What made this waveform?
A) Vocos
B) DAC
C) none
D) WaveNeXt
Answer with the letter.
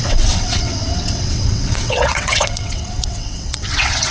D